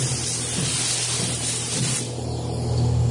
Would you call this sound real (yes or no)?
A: yes